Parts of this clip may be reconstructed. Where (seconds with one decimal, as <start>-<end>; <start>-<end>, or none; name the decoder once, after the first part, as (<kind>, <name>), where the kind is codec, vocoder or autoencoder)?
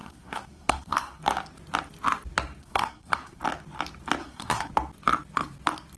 0.0-1.2 (codec, SNAC); 2.6-3.4; 4.2-4.7